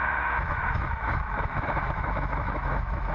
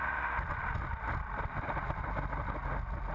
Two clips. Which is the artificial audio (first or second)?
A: first